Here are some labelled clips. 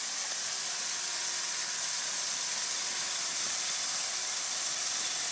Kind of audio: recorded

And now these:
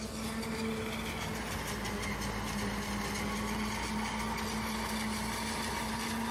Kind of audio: recorded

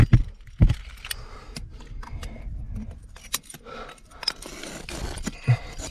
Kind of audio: recorded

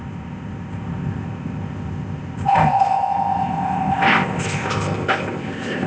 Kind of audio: remade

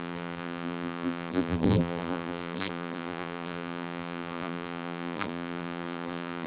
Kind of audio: remade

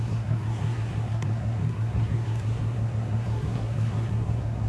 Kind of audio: remade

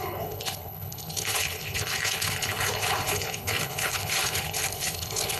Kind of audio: remade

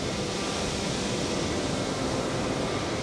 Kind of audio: recorded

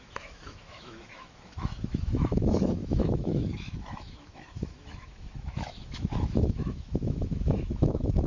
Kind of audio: remade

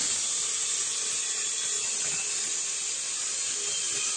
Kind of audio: recorded